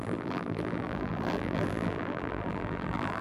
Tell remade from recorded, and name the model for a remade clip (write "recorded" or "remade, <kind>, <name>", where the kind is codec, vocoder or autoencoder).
remade, vocoder, BigVGAN v2